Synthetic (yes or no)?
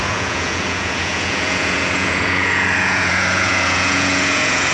yes